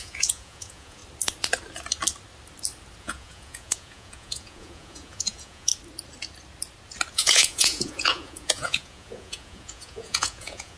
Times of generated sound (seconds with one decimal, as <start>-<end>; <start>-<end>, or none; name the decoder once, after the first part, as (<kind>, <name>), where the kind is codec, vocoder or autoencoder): 0.0-1.0 (vocoder, Vocos); 3.0-5.7; 7.1-10.8